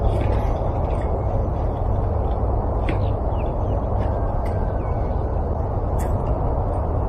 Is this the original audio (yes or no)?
yes